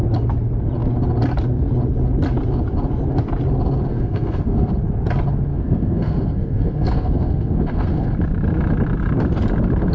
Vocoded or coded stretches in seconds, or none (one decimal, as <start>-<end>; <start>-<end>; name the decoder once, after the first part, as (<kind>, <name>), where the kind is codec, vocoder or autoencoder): 3.9-4.7 (codec, SNAC); 5.5-8.1